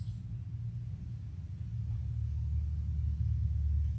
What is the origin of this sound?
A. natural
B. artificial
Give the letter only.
A